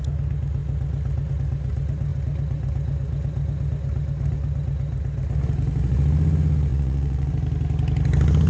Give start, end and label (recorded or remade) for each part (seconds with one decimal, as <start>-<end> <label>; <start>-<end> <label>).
0.0-6.7 recorded; 6.7-7.3 remade; 7.3-8.5 recorded